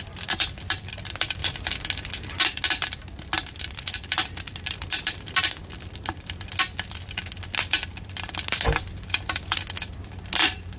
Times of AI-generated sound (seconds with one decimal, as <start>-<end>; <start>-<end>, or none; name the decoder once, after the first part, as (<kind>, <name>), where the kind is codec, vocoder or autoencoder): none